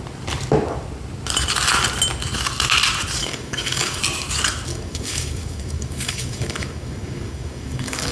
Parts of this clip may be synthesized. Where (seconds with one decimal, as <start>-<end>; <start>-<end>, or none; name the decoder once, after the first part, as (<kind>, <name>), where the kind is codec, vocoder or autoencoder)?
3.2-4.0 (codec, DAC); 4.7-8.1